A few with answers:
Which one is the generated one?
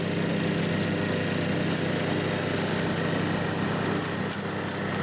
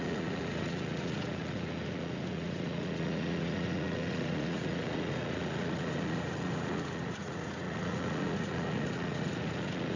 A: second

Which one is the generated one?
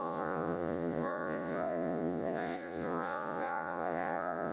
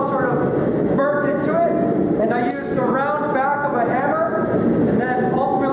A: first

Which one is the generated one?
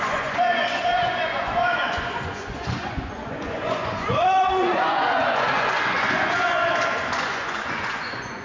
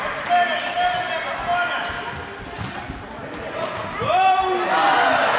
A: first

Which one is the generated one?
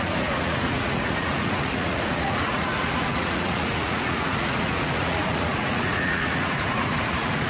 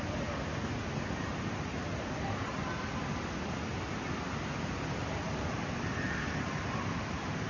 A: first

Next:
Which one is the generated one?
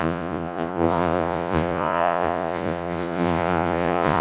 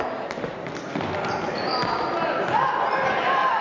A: first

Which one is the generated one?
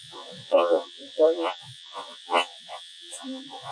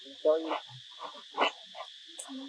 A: first